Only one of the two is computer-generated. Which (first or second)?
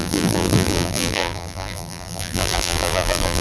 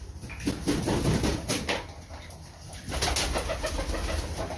first